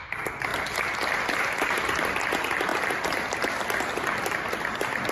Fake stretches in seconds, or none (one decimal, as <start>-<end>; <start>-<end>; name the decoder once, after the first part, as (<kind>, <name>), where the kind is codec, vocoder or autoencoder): none